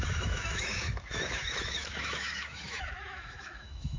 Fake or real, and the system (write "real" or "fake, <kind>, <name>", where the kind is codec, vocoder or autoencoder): fake, autoencoder, DAC-VAE